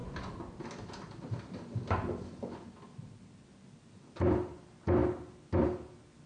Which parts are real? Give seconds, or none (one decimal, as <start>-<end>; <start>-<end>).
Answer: 0.0-6.3